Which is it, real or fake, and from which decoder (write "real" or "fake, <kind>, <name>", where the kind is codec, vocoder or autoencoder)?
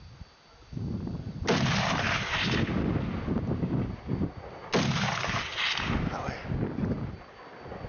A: real